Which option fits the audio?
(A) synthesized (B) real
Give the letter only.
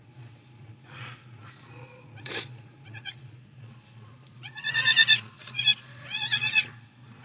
A